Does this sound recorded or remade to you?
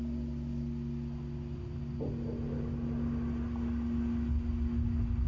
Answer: recorded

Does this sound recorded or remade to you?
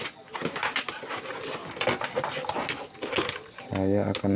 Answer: recorded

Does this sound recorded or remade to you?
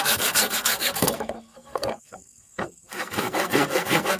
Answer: remade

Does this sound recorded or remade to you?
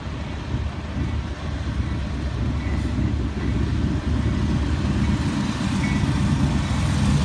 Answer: recorded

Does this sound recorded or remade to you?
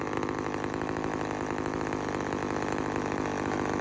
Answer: recorded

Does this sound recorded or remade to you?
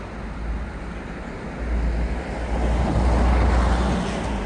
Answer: recorded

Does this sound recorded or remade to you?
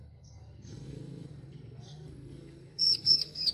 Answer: remade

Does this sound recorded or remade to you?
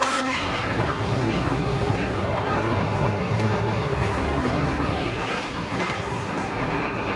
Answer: remade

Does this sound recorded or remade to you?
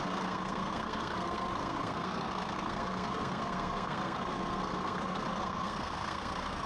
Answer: remade